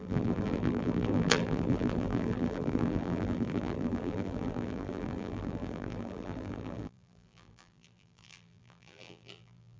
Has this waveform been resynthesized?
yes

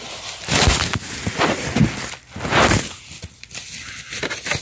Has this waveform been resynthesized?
no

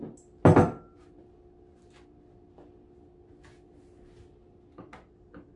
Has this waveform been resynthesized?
no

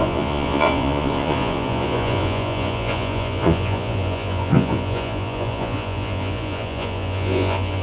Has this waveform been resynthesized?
yes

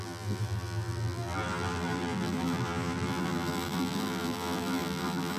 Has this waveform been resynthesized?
yes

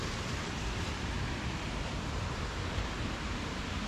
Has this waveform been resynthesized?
yes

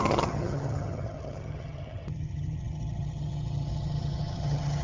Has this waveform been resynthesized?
yes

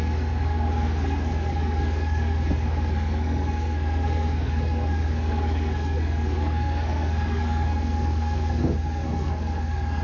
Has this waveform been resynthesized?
yes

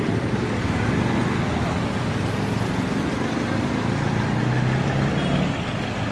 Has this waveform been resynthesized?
no